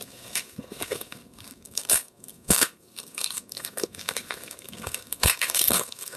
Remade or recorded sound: remade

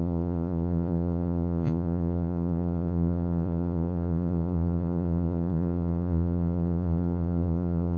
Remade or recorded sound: remade